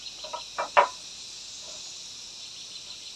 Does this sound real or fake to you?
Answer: real